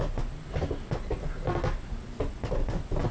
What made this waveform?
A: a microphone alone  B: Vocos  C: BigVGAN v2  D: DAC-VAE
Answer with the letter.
A